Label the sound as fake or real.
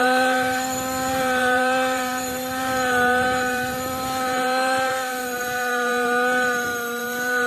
fake